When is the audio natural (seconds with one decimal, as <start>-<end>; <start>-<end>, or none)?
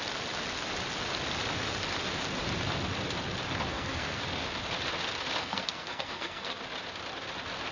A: 0.0-3.7; 4.2-5.4; 6.6-7.7